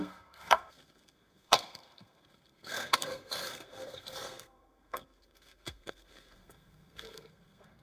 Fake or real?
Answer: fake